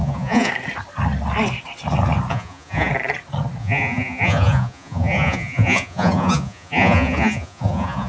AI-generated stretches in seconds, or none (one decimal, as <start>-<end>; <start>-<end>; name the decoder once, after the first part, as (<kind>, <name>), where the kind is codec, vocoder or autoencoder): 0.0-0.5 (vocoder, Vocos); 2.3-2.9; 3.6-8.1